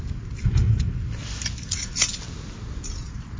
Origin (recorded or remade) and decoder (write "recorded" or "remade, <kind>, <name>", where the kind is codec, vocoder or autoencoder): recorded